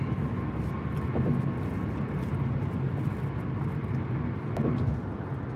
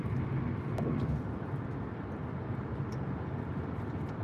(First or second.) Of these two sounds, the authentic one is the first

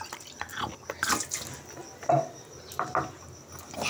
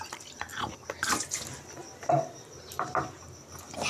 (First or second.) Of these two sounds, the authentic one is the first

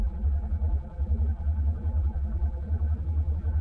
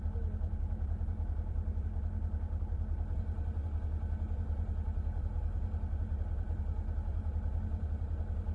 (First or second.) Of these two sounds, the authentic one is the second